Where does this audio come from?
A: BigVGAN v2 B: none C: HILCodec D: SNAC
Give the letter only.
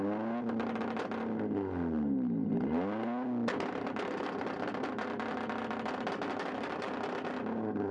B